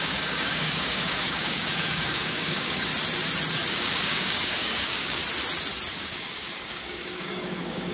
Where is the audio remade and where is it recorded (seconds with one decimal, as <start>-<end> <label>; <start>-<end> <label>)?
0.0-2.9 remade; 2.9-3.7 recorded; 3.7-5.2 remade; 5.2-5.9 recorded; 5.9-7.9 remade